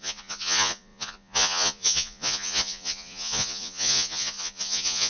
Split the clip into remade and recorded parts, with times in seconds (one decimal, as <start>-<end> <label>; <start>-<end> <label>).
0.0-5.1 remade